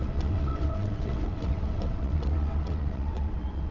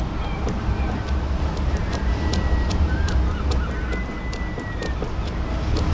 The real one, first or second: second